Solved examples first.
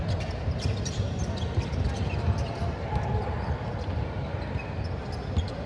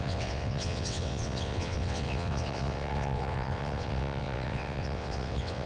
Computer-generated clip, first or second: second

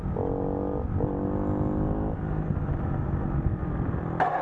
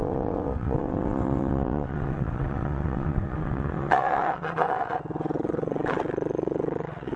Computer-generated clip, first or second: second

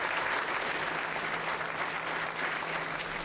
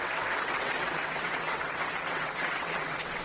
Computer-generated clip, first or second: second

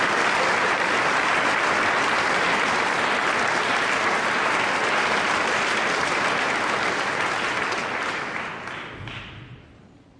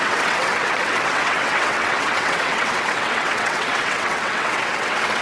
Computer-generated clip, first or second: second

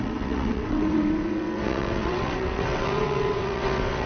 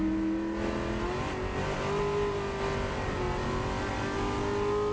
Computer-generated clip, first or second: first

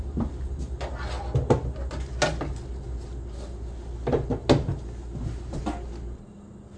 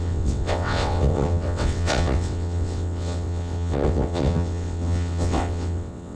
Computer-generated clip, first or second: second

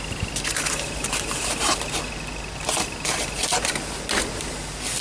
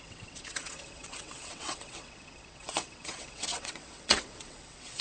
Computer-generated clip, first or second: second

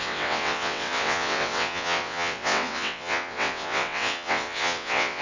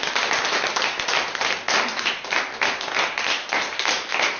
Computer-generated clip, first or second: first